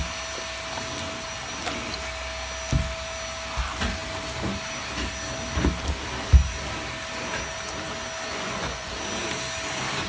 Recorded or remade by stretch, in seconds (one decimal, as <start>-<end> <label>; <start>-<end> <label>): 0.0-8.3 recorded; 8.3-8.9 remade; 8.9-10.1 recorded